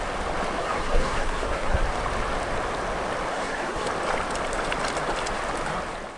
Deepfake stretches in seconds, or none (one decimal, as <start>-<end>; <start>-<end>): 0.6-1.8; 3.3-3.9